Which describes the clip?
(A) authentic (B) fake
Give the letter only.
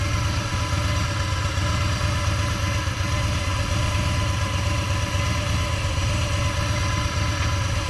A